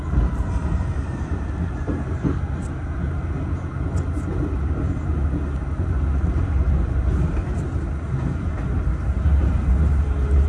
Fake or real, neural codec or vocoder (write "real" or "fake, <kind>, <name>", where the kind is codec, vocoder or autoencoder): real